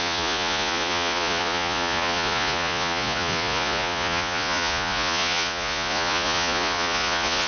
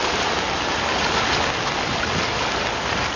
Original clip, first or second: second